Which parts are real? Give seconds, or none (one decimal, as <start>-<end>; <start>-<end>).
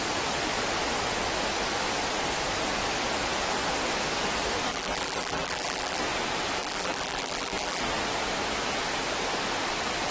0.0-4.7; 6.0-6.6; 7.8-10.1